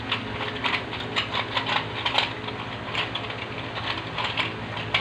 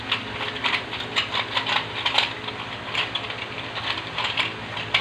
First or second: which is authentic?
first